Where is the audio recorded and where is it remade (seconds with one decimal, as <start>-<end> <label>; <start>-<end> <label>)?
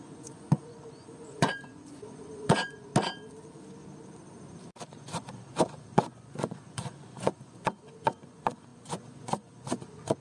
0.0-2.9 remade; 2.9-5.0 recorded; 5.0-10.2 remade